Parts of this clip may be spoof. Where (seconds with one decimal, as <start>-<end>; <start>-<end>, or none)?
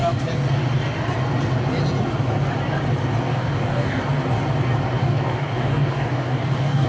3.3-4.0; 5.0-6.9